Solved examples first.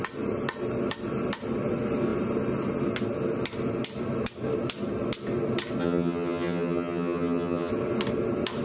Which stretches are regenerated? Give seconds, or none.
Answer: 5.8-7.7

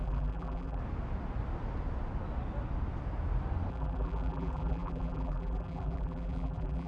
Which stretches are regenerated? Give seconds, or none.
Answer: 0.0-0.8; 3.7-6.9

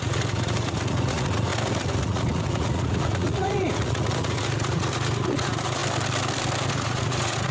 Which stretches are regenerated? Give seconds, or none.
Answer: 0.0-1.5; 2.0-5.8; 6.7-7.5

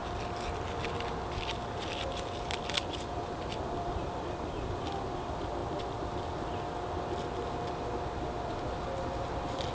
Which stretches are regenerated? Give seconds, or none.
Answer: none